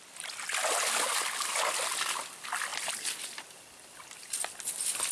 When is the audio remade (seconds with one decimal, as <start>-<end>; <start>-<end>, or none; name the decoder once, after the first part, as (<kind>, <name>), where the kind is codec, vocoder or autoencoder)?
none